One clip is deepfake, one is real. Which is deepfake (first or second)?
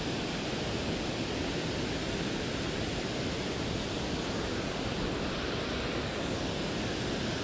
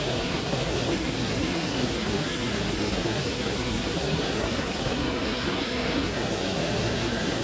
second